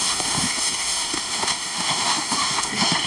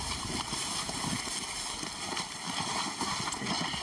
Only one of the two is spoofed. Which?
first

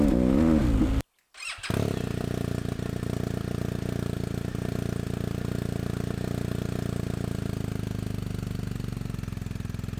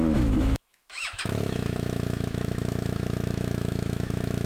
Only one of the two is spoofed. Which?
second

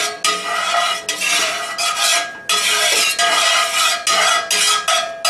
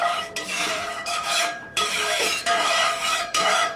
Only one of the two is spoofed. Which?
second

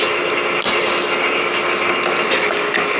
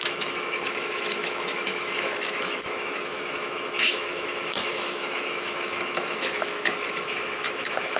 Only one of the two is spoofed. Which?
second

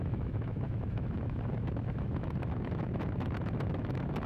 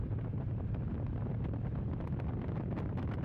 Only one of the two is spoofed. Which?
first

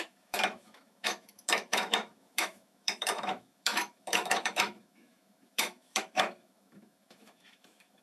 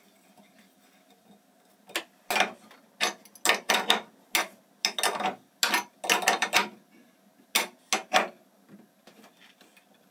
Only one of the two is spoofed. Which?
first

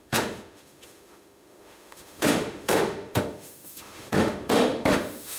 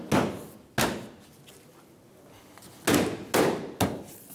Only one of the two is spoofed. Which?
first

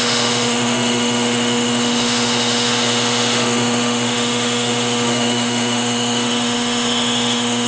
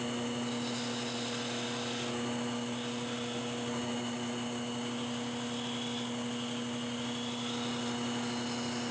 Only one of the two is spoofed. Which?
first